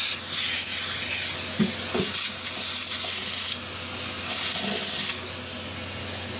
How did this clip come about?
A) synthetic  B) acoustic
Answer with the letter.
B